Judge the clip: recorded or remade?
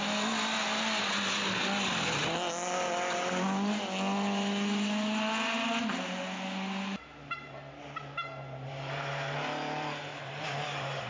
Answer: recorded